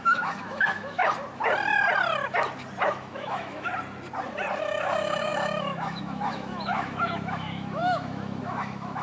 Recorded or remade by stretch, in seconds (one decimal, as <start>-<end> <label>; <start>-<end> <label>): 0.0-1.0 remade; 1.0-2.8 recorded; 2.8-3.7 remade; 3.7-4.6 recorded; 4.6-9.0 remade